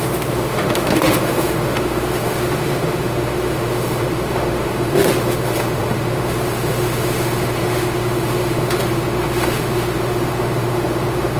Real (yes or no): no